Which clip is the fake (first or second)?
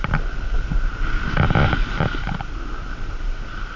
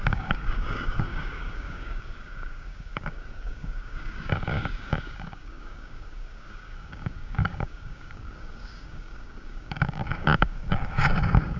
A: second